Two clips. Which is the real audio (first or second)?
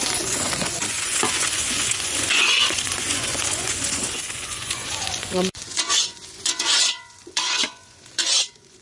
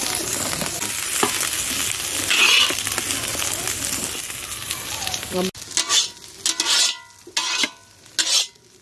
second